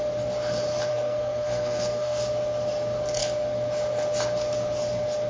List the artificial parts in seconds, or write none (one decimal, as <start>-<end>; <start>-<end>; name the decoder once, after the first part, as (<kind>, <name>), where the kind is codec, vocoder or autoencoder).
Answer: 0.9-2.2 (codec, SNAC)